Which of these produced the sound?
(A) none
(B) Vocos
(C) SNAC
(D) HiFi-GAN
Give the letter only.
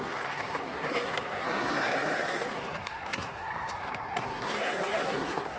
C